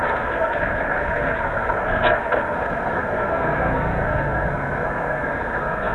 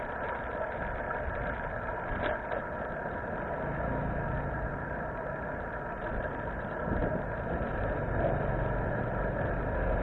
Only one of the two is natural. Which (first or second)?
second